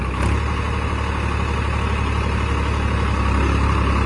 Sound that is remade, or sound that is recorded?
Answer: recorded